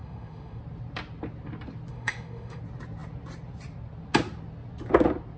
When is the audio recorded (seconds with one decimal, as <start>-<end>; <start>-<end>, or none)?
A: 0.6-1.9; 2.6-5.4